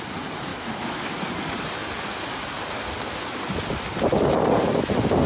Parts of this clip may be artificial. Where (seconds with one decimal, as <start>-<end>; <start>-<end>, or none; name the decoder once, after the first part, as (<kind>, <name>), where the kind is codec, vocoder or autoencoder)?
0.5-1.1 (autoencoder, DAC-VAE)